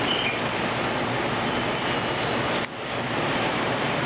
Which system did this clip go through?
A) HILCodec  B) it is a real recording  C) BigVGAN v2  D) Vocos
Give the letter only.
B